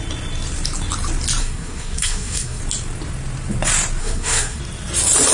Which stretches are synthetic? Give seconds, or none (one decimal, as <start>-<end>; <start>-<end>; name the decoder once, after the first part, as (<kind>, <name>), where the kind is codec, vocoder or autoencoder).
1.4-2.6 (codec, SNAC); 4.0-4.6